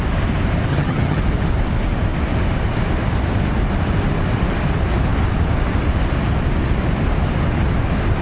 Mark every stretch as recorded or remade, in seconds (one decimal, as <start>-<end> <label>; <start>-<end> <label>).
0.0-0.7 recorded; 0.7-1.2 remade; 1.2-8.2 recorded